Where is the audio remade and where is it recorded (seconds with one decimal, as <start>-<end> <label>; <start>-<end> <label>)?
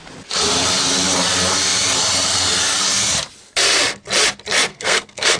0.0-4.7 recorded; 4.7-5.4 remade